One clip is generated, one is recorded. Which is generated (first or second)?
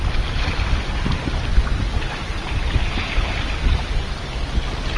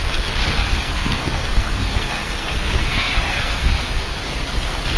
second